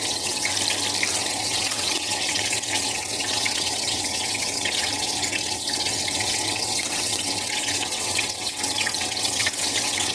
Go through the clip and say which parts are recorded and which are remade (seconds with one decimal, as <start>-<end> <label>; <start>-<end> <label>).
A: 0.0-0.5 remade; 0.5-1.1 recorded; 1.1-10.1 remade